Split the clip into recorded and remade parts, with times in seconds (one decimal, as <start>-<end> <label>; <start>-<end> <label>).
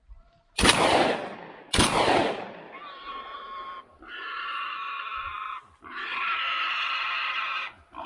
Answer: 0.0-8.1 recorded